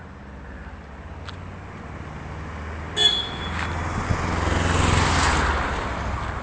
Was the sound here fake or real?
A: real